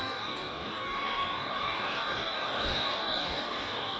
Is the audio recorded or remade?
remade